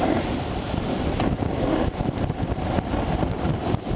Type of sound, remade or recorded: recorded